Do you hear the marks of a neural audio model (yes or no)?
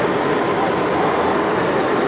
no